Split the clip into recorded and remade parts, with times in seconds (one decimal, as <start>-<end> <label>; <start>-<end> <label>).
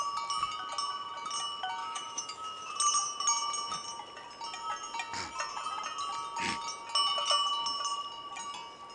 0.0-1.8 recorded; 1.8-2.7 remade; 2.7-8.9 recorded